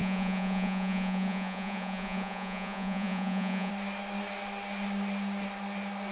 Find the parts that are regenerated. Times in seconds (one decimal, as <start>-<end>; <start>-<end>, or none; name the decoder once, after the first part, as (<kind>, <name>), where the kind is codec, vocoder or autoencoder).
0.0-3.7 (vocoder, Vocos)